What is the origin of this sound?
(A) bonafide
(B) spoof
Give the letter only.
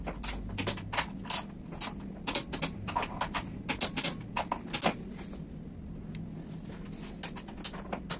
A